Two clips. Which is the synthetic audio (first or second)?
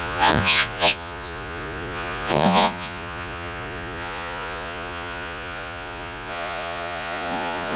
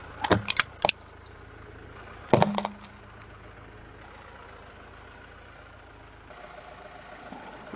first